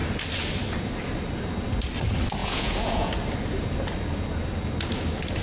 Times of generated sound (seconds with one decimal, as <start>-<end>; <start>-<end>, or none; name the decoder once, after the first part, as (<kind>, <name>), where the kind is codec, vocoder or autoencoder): 2.4-3.1 (vocoder, Vocos)